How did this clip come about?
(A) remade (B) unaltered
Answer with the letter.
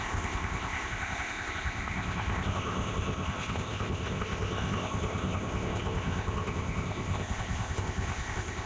A